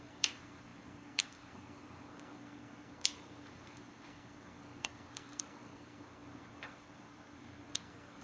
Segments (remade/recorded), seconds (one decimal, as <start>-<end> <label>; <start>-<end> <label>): 0.0-8.2 remade